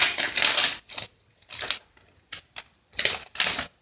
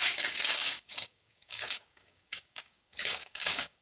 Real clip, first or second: first